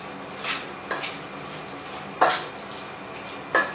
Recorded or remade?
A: recorded